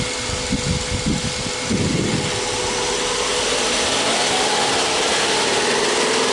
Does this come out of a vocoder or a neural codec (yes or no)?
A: no